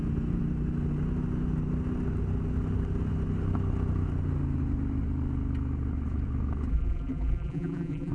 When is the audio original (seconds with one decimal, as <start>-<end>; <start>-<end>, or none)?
0.0-6.7